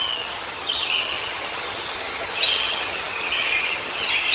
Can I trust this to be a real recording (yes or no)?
no